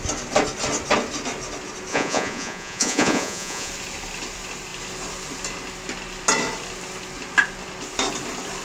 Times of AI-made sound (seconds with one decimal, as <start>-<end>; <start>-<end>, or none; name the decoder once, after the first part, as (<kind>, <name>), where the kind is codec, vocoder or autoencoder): 1.9-3.7 (vocoder, Vocos)